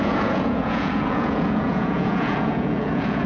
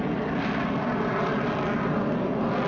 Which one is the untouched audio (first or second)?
second